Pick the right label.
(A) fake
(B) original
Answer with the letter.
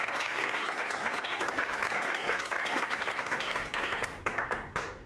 A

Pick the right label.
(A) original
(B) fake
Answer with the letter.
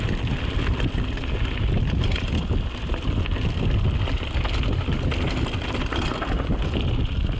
A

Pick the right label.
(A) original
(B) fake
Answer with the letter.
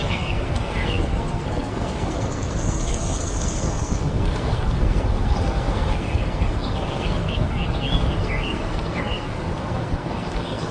B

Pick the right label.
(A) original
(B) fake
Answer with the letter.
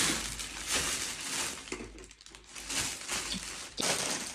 A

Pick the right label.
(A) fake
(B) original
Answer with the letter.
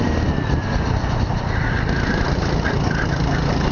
B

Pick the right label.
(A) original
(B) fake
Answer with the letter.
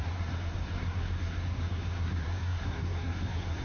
B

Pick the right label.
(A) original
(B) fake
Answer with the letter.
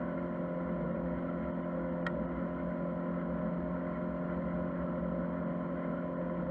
A